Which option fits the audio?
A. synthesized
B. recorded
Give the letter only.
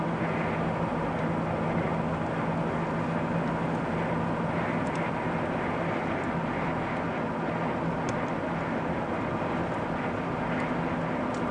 B